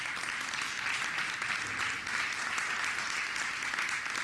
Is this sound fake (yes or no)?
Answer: no